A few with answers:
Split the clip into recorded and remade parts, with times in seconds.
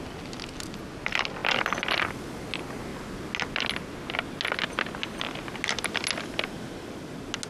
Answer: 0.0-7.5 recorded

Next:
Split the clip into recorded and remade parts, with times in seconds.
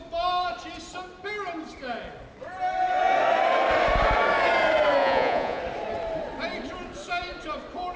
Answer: 0.0-5.0 recorded; 5.0-5.6 remade; 5.6-8.0 recorded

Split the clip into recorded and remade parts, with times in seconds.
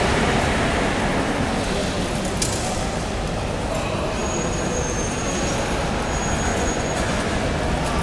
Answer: 0.0-6.5 recorded; 6.5-7.4 remade; 7.4-8.0 recorded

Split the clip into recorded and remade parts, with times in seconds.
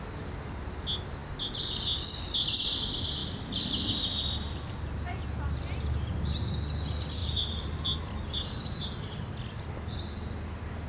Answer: 0.0-7.2 recorded; 7.2-8.6 remade; 8.6-10.9 recorded